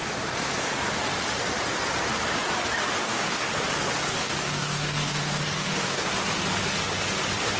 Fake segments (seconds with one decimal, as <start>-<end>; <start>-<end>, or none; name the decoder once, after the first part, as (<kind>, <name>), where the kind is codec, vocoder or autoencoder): 3.0-3.5 (codec, DAC); 4.1-6.1